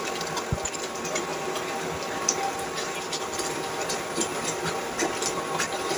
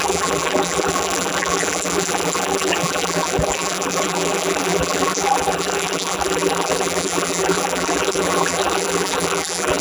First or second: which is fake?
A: second